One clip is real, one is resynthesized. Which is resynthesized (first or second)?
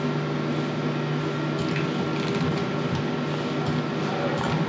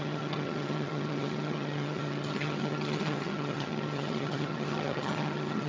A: second